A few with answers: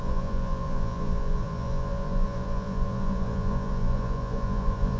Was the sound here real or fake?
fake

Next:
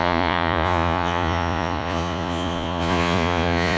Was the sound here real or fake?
fake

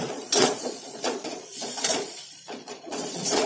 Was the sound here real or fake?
fake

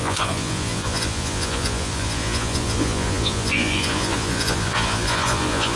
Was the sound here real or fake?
fake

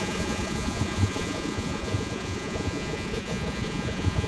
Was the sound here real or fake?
fake